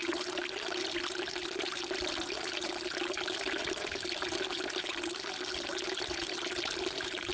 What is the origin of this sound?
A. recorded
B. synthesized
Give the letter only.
A